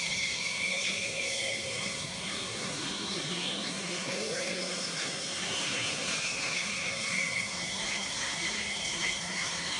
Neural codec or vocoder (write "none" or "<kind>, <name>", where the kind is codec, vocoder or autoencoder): codec, SNAC